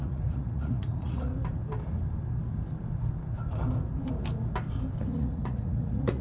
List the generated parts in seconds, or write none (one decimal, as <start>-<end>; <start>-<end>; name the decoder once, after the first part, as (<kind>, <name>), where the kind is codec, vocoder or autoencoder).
0.0-1.3 (vocoder, Vocos); 5.0-6.2